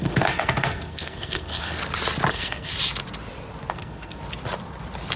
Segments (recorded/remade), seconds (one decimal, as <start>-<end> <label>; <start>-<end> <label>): 0.0-1.8 remade; 1.8-2.3 recorded; 2.3-2.7 remade; 2.7-3.7 recorded; 3.7-4.2 remade; 4.2-5.2 recorded

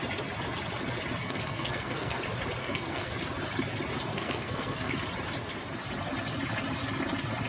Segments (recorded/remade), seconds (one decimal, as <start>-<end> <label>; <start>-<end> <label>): 0.0-1.2 recorded; 1.2-2.2 remade; 2.2-2.6 recorded; 2.6-3.1 remade; 3.1-4.1 recorded; 4.1-4.9 remade; 4.9-7.5 recorded

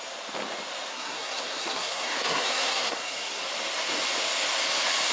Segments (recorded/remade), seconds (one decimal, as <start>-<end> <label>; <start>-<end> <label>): 0.0-0.9 recorded; 0.9-3.4 remade; 3.4-5.1 recorded

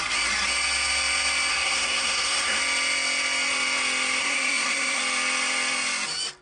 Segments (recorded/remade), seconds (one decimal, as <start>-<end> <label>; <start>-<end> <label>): 0.0-1.5 recorded; 1.5-2.6 remade; 2.6-4.2 recorded; 4.2-5.0 remade; 5.0-6.4 recorded

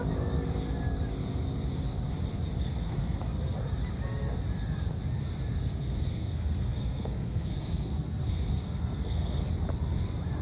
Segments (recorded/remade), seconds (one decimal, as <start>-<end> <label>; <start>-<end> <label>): 0.0-2.6 recorded; 2.6-3.2 remade; 3.2-5.5 recorded; 5.5-9.5 remade; 9.5-10.4 recorded

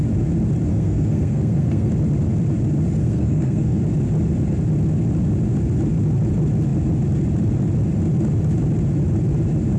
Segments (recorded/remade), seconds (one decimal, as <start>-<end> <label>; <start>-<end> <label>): 0.0-0.7 recorded; 0.7-1.9 remade; 1.9-3.0 recorded; 3.0-3.8 remade; 3.8-9.8 recorded

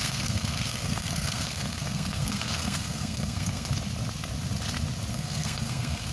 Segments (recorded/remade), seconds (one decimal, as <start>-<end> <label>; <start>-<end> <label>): 0.0-3.7 remade; 3.7-5.1 recorded; 5.1-6.1 remade